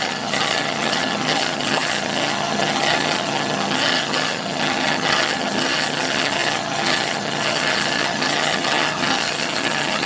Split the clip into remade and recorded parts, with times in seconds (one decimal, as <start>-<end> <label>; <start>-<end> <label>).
0.0-10.1 remade